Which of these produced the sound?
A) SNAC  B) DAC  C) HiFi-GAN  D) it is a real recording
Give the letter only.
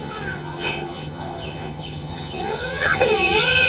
C